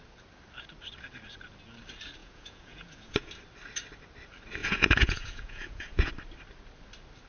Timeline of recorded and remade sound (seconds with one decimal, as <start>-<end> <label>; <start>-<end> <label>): 0.0-2.2 recorded; 2.2-3.3 remade; 3.3-4.6 recorded; 4.6-6.1 remade; 6.1-7.3 recorded